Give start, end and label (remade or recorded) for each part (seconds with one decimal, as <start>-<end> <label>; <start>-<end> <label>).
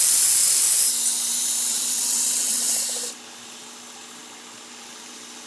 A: 0.0-1.7 recorded; 1.7-2.8 remade; 2.8-5.5 recorded